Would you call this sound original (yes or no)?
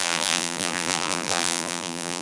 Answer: no